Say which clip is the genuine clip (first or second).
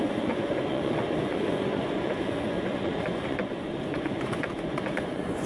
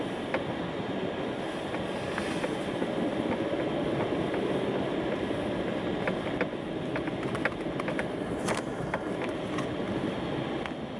second